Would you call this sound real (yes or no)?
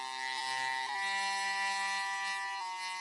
yes